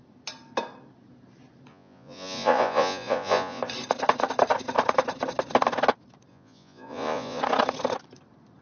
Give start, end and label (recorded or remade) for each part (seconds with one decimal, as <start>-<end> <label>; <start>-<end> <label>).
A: 0.0-1.7 recorded; 1.7-3.6 remade; 3.6-6.3 recorded; 6.3-7.4 remade; 7.4-8.6 recorded